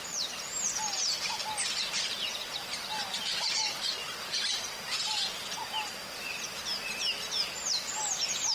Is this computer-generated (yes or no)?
no